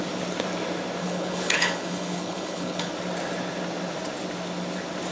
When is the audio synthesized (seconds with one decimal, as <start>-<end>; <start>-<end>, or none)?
1.0-2.9

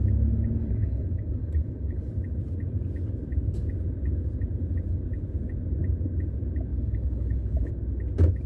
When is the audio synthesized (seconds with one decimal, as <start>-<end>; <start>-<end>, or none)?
0.6-2.1; 6.7-7.7